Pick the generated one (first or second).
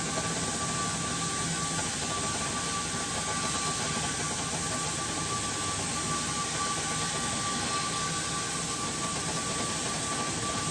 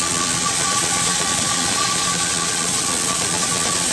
second